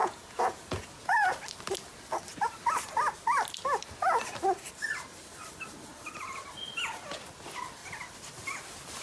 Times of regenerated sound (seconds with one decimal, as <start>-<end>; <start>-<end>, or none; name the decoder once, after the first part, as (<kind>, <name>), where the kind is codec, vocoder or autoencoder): 0.0-1.3 (vocoder, Vocos)